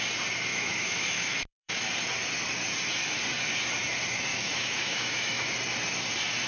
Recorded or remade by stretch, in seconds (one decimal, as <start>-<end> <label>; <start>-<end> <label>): 0.0-0.5 recorded; 0.5-1.7 remade; 1.7-4.3 recorded; 4.3-5.5 remade; 5.5-6.5 recorded